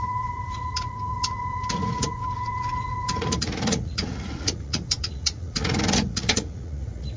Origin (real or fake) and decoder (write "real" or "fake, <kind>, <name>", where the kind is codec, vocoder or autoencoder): fake, vocoder, Vocos